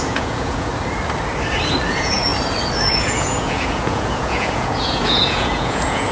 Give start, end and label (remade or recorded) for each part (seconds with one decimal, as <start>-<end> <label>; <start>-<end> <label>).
0.0-0.7 remade; 0.7-1.9 recorded; 1.9-2.3 remade; 2.3-2.8 recorded; 2.8-6.1 remade